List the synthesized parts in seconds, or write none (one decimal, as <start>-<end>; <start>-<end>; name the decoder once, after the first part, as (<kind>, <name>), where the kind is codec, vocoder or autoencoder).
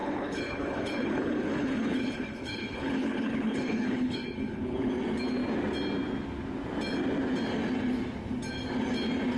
0.0-4.9 (codec, HILCodec)